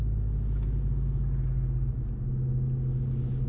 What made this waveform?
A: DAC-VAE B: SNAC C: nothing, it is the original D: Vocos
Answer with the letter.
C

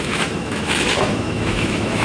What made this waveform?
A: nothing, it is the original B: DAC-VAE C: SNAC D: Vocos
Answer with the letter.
B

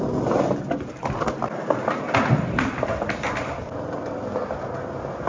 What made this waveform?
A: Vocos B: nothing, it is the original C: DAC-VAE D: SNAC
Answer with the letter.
B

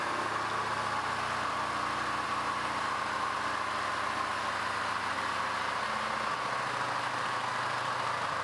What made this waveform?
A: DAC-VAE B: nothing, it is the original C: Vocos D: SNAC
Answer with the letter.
B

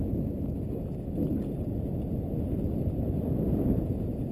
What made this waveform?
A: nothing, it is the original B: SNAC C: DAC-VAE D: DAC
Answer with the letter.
A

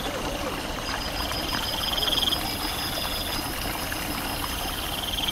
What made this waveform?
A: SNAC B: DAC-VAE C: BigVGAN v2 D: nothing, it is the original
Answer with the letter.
D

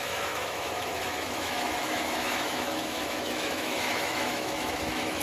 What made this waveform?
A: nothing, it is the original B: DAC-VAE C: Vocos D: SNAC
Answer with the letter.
B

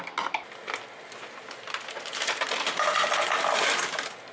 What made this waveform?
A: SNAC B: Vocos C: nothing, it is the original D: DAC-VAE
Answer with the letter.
C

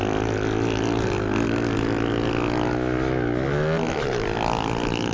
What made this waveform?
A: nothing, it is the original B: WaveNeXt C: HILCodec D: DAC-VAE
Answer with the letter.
A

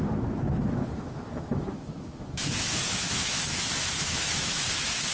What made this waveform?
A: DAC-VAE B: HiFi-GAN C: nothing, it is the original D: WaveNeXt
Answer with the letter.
A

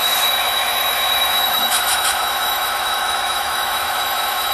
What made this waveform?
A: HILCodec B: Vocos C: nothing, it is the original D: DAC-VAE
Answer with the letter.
D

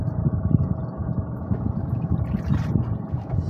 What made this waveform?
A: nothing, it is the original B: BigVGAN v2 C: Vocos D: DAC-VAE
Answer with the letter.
A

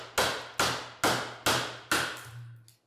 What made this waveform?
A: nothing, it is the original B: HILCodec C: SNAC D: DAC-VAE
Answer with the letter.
A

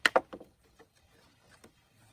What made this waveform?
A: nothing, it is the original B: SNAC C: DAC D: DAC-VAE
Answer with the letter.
A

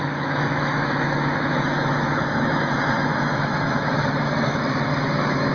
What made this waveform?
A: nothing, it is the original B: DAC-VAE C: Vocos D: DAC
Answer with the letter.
B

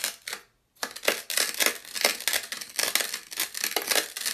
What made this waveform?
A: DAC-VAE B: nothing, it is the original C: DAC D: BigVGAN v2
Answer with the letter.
B